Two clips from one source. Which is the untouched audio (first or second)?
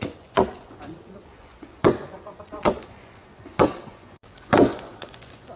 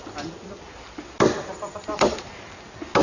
second